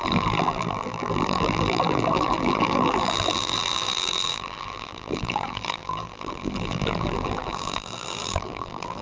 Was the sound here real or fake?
fake